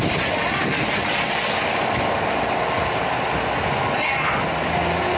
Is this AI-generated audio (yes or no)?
no